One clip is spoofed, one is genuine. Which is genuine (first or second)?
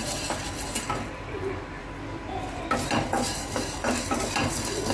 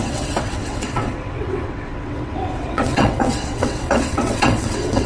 first